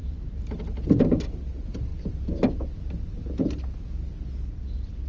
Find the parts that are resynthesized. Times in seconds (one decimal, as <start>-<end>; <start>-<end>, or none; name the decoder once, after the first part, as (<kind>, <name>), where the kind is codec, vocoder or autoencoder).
0.0-0.6 (vocoder, BigVGAN v2)